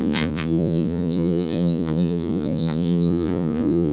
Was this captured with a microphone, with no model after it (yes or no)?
no